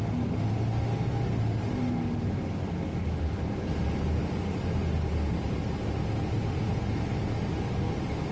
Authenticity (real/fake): real